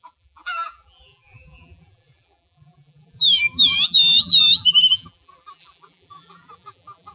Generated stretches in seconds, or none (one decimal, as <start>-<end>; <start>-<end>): 0.0-7.1